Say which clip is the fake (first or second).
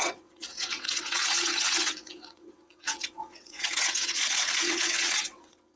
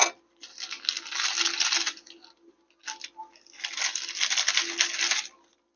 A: first